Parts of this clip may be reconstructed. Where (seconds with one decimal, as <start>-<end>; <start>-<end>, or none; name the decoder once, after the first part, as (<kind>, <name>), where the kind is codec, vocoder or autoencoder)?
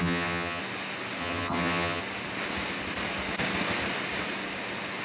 0.0-0.6 (vocoder, HiFi-GAN); 1.2-2.0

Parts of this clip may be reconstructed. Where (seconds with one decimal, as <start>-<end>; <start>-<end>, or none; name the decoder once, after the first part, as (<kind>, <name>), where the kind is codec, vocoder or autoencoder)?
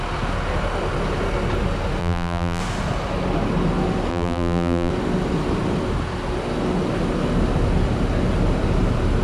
2.0-2.6 (vocoder, BigVGAN v2); 4.1-4.9